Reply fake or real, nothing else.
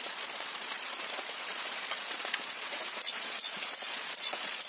fake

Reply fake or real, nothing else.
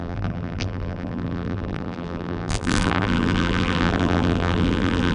fake